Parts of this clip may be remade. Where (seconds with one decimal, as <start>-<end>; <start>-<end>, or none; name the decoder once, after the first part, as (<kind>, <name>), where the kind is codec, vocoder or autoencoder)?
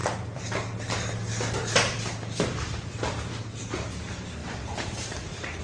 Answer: 0.0-3.4 (vocoder, BigVGAN v2); 4.4-5.6